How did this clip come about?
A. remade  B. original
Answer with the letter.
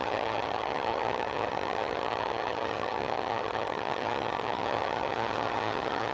A